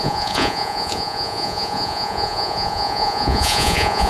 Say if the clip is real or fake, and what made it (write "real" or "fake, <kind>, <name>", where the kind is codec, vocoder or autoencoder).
fake, vocoder, Vocos